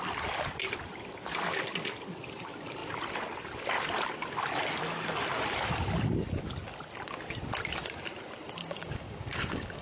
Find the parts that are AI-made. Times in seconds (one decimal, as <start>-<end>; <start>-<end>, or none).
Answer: 8.6-9.8